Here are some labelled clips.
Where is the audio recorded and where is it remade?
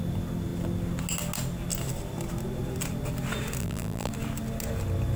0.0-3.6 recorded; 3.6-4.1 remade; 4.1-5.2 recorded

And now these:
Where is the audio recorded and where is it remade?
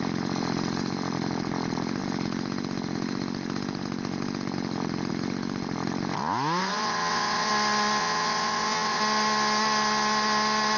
0.0-6.6 recorded; 6.6-7.5 remade; 7.5-8.0 recorded; 8.0-9.0 remade; 9.0-10.8 recorded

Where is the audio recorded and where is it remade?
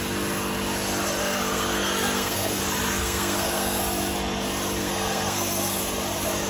0.0-1.2 recorded; 1.2-2.6 remade; 2.6-3.0 recorded; 3.0-3.8 remade; 3.8-4.8 recorded; 4.8-5.8 remade; 5.8-6.5 recorded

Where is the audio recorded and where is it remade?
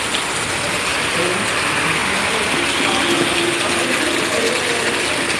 0.0-5.4 recorded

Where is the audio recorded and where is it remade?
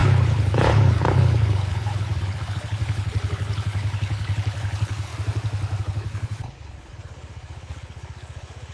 0.0-5.1 remade; 5.1-5.8 recorded; 5.8-8.7 remade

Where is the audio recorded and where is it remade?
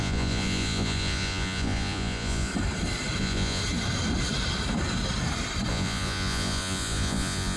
0.0-2.5 remade; 2.5-3.2 recorded; 3.2-3.6 remade; 3.6-5.7 recorded; 5.7-7.6 remade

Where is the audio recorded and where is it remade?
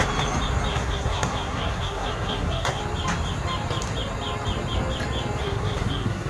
0.0-0.7 recorded; 0.7-2.8 remade; 2.8-5.4 recorded; 5.4-6.3 remade